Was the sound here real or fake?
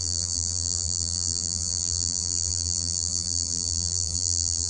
fake